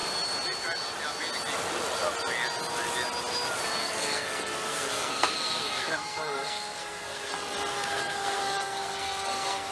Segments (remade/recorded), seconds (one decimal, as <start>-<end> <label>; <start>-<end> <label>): 0.0-3.8 recorded; 3.8-7.3 remade; 7.3-7.7 recorded; 7.7-9.7 remade